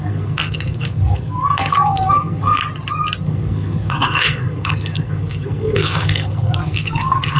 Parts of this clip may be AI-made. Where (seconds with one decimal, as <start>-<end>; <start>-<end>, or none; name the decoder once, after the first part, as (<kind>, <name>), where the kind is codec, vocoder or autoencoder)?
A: 0.0-2.6 (codec, SNAC); 3.2-7.4